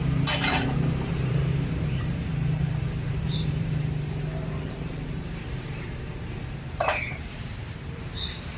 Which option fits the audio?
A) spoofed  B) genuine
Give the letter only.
A